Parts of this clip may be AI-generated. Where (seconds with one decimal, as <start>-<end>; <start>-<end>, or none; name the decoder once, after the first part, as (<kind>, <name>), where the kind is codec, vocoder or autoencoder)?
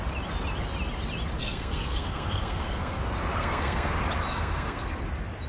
1.4-3.0 (codec, SNAC); 3.4-3.9; 4.3-5.0